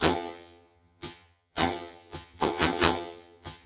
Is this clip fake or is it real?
fake